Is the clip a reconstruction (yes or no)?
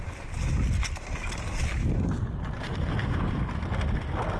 no